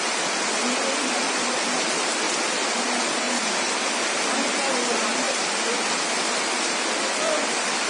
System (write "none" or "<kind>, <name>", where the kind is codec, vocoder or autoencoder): none